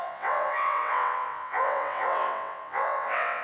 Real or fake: fake